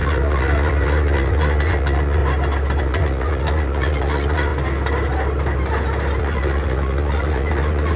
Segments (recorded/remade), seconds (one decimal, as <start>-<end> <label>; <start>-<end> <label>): 0.0-2.2 remade; 2.2-2.8 recorded; 2.8-4.5 remade; 4.5-6.2 recorded; 6.2-8.0 remade